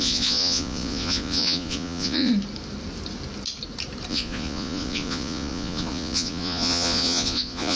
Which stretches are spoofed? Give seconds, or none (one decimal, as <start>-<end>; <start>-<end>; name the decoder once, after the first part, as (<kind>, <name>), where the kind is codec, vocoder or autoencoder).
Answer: 0.0-2.3 (vocoder, Vocos); 4.1-7.8